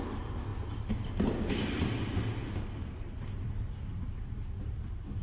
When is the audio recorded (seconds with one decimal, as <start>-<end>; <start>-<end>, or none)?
0.0-5.2